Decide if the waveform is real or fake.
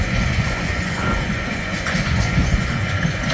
fake